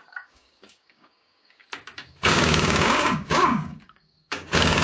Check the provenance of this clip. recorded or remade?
remade